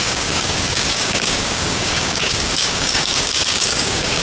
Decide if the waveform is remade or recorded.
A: remade